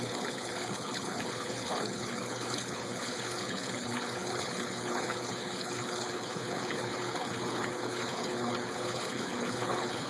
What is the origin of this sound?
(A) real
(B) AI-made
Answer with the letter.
B